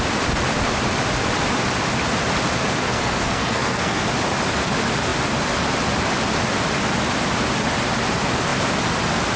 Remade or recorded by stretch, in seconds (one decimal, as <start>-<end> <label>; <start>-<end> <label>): 0.0-2.8 recorded; 2.8-4.0 remade; 4.0-9.4 recorded